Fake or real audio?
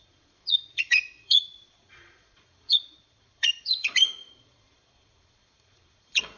fake